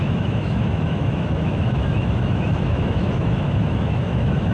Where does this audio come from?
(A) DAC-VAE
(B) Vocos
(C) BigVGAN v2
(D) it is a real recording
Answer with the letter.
A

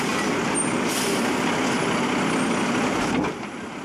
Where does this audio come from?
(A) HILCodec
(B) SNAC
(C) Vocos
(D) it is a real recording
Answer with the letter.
D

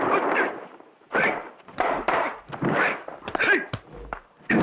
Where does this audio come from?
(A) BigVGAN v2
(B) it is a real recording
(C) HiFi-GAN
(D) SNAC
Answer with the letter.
A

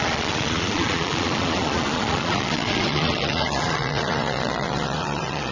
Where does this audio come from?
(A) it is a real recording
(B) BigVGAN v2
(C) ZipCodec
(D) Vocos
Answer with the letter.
D